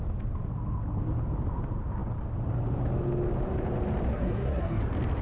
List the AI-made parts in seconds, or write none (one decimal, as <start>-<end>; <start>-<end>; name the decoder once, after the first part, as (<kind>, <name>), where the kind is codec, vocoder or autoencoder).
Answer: 4.1-4.8 (codec, SNAC)